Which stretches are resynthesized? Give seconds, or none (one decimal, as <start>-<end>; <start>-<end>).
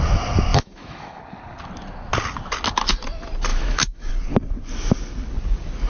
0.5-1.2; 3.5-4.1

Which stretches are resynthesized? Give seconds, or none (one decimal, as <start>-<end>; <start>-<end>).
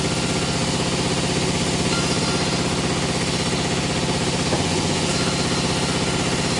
4.6-5.1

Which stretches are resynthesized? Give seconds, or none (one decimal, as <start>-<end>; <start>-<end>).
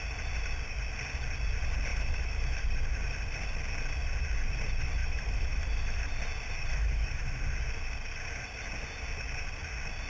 1.9-2.6; 5.0-6.1; 6.7-7.4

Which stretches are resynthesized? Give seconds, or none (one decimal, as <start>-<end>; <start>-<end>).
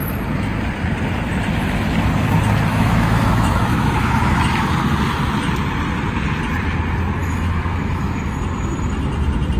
2.7-4.6; 7.2-8.0